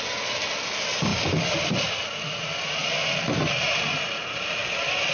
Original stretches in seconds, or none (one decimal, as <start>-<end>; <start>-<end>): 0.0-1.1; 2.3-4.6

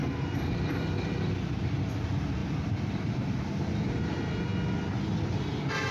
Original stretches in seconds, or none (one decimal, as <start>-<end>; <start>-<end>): 0.0-2.4; 4.0-5.9

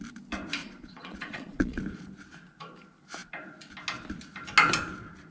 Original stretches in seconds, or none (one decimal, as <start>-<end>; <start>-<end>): 0.0-0.6; 1.8-5.3